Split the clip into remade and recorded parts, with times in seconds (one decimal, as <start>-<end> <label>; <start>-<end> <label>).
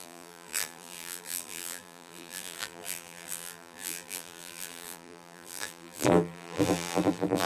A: 0.0-7.5 remade